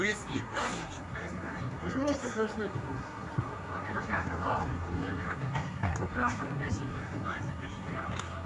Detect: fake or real fake